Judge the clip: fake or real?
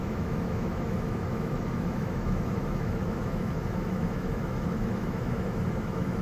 fake